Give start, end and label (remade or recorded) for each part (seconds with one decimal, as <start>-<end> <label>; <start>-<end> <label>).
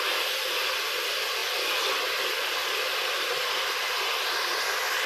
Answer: 0.0-2.6 recorded; 2.6-3.3 remade; 3.3-5.1 recorded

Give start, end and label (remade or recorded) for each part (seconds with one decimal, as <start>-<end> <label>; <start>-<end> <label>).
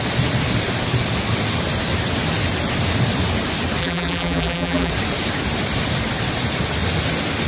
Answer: 0.0-3.8 recorded; 3.8-4.9 remade; 4.9-7.5 recorded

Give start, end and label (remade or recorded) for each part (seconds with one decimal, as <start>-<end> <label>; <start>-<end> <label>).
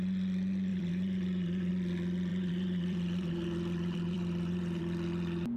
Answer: 0.0-0.7 recorded; 0.7-1.7 remade; 1.7-2.3 recorded; 2.3-4.8 remade; 4.8-5.6 recorded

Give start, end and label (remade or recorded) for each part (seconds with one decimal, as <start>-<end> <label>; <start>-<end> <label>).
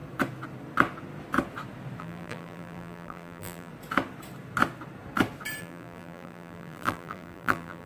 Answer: 0.0-2.0 recorded; 2.0-3.7 remade; 3.7-5.6 recorded; 5.6-7.9 remade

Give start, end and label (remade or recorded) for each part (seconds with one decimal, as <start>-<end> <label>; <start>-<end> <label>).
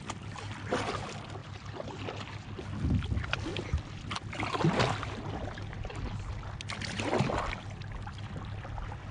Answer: 0.0-1.4 recorded; 1.4-1.9 remade; 1.9-9.1 recorded